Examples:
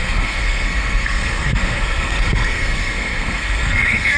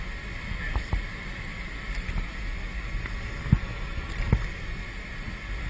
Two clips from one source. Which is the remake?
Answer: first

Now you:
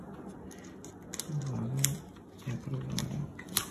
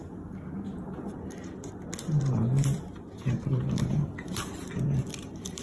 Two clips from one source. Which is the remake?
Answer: second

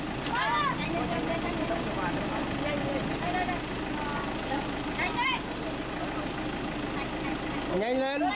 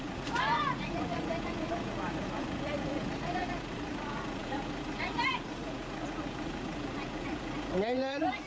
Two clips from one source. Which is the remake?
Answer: second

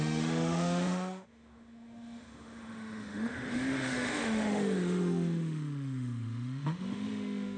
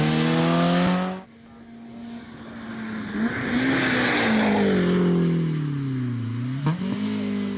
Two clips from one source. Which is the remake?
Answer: first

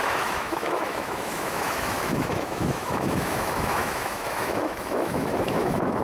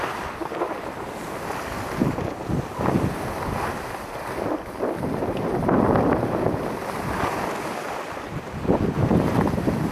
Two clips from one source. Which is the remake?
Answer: first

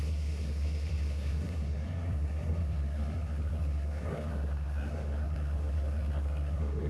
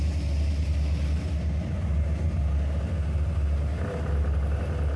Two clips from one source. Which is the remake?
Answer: first